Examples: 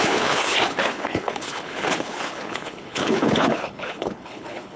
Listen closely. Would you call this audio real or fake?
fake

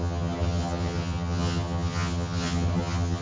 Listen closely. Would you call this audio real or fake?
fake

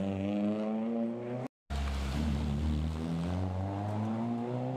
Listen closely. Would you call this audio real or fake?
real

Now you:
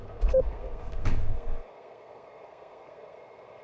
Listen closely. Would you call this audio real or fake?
fake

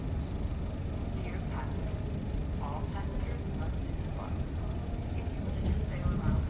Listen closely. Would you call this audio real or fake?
real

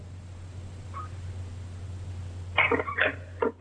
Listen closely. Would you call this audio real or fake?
real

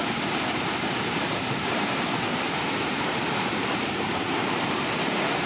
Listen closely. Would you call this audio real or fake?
fake